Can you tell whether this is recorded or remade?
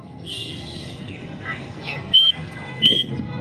remade